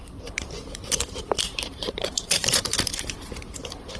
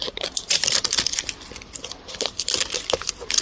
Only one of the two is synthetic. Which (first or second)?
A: first